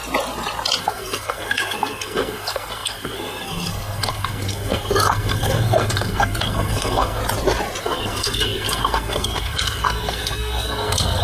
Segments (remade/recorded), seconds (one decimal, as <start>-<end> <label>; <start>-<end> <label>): 0.0-0.8 recorded; 0.8-7.2 remade; 7.2-7.8 recorded; 7.8-11.2 remade